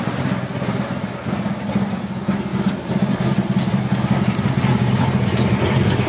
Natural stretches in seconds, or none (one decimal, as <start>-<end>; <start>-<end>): 0.0-6.1